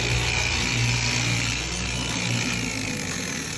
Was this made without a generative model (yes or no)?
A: yes